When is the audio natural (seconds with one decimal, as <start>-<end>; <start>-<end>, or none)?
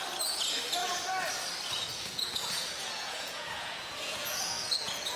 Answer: 0.0-1.9